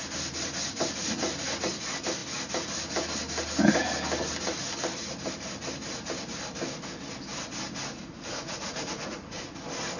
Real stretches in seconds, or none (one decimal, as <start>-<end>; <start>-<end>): 0.0-8.0; 9.6-10.0